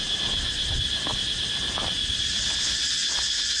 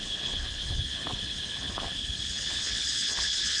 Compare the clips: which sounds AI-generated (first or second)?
second